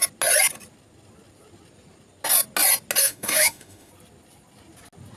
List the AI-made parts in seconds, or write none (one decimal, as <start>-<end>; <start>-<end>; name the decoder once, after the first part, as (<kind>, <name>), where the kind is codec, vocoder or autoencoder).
3.0-3.9 (autoencoder, DAC-VAE)

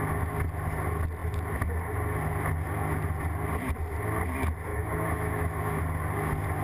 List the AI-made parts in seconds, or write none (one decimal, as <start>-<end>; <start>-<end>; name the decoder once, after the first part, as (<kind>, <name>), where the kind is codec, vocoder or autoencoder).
4.7-5.8 (autoencoder, DAC-VAE)

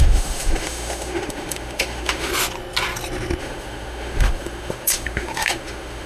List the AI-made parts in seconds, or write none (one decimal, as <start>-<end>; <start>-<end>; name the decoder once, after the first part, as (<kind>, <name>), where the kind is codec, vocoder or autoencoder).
0.0-2.3 (autoencoder, DAC-VAE); 3.4-6.1

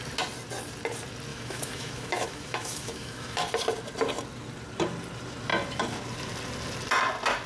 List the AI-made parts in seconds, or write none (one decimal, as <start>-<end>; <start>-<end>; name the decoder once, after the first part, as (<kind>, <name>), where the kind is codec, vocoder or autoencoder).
1.3-3.5 (autoencoder, DAC-VAE)